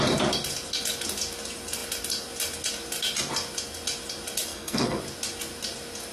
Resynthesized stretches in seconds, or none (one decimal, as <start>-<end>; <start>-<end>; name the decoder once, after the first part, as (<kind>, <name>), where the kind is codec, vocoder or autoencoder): 4.5-5.0 (codec, SNAC)